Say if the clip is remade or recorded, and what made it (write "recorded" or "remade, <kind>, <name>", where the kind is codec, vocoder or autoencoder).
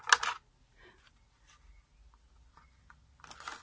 recorded